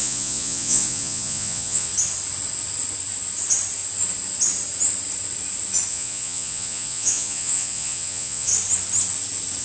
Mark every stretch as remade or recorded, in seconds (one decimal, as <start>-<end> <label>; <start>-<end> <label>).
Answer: 0.0-1.9 remade; 1.9-5.9 recorded; 5.9-8.5 remade; 8.5-9.6 recorded